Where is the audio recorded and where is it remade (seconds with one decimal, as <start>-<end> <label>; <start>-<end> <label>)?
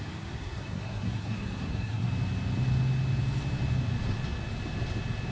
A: 0.0-0.4 recorded; 0.4-2.1 remade; 2.1-5.3 recorded